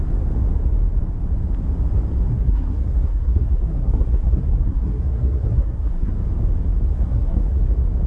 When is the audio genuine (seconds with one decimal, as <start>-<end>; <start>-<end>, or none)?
0.0-2.3; 6.1-6.9; 7.6-8.1